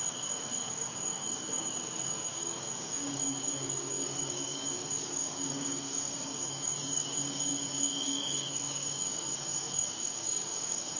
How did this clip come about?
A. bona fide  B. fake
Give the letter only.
B